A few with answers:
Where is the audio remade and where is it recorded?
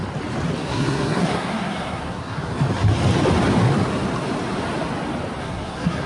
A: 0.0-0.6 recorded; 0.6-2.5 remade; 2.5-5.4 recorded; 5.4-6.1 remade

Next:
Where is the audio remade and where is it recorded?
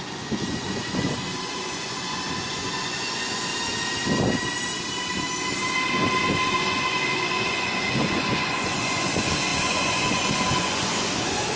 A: 0.0-3.5 remade; 3.5-6.5 recorded; 6.5-11.6 remade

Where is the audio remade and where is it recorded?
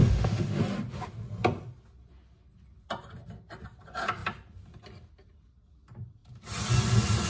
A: 0.0-0.6 remade; 0.6-7.3 recorded